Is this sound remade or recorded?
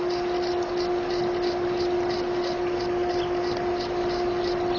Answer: recorded